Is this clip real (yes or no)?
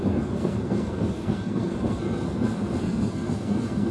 no